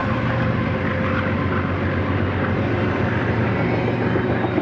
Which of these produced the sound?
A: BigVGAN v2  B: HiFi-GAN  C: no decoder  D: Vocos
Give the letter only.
C